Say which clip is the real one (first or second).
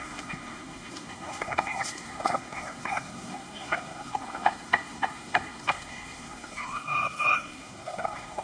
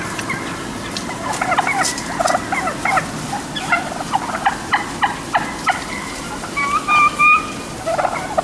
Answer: second